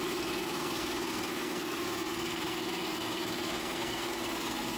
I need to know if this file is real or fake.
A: fake